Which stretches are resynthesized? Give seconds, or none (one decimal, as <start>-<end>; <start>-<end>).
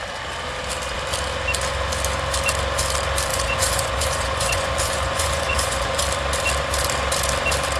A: 3.3-6.0